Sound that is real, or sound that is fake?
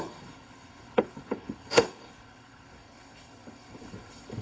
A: fake